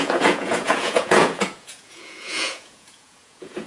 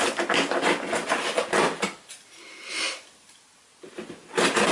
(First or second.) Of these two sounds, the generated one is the first